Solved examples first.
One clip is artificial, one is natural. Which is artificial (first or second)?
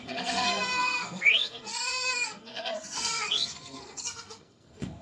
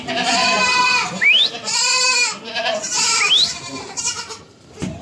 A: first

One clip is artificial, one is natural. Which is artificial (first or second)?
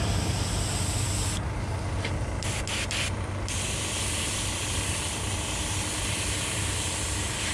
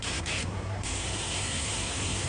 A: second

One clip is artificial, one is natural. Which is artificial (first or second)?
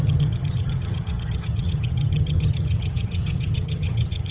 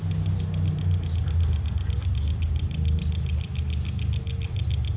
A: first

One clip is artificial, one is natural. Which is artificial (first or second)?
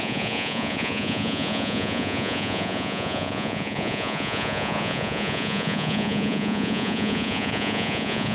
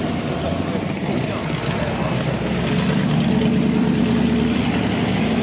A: first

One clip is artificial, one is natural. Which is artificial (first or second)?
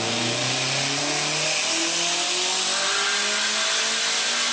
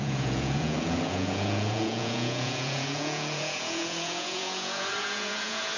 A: second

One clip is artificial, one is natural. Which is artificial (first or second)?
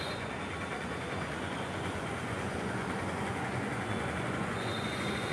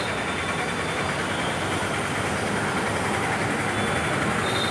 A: first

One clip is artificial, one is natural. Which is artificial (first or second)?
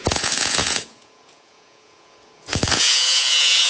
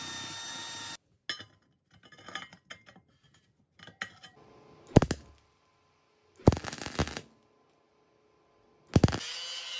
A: first